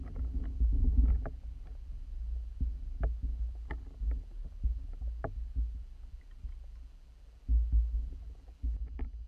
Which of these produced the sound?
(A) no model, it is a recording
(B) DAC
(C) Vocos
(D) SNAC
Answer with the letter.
A